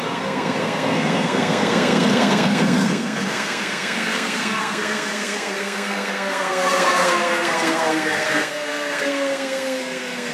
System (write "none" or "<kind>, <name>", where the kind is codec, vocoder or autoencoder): codec, SNAC